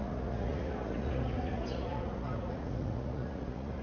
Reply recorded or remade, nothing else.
remade